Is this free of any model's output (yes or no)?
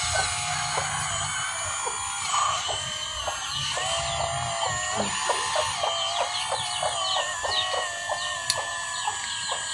yes